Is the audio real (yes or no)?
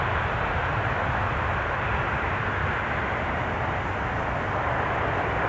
yes